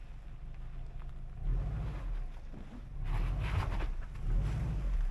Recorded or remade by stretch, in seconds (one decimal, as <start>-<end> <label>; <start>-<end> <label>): 0.0-1.5 remade; 1.5-4.6 recorded; 4.6-5.1 remade